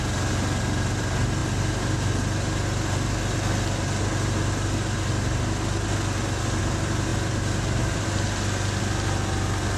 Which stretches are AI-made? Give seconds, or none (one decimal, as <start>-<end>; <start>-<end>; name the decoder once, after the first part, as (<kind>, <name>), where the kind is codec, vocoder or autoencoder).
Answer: none